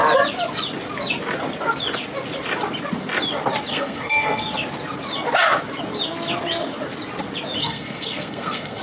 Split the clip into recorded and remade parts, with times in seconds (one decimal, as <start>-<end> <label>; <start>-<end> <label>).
0.0-3.7 recorded; 3.7-4.4 remade; 4.4-7.6 recorded; 7.6-8.8 remade